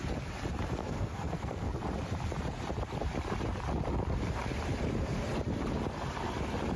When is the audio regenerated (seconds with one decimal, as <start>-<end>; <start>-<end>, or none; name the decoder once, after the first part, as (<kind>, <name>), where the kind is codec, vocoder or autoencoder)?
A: 0.8-1.8 (codec, SNAC)